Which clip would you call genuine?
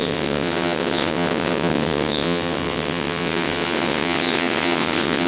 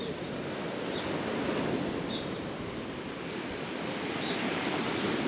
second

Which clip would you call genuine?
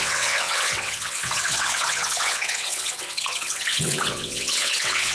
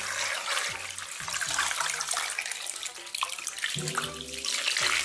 second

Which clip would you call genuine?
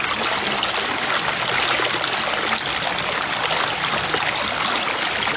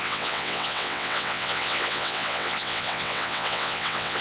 first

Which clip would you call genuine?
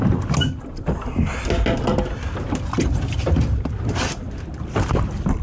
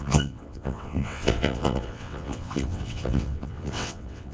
first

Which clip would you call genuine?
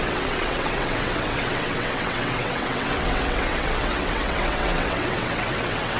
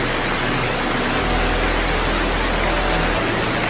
second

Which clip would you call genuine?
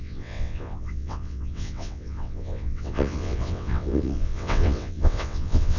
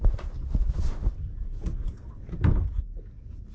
second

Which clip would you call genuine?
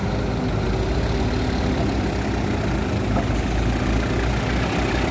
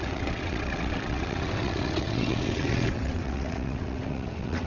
first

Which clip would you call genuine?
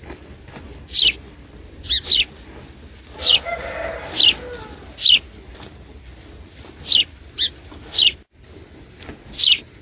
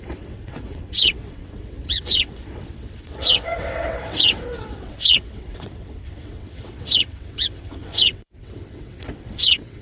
first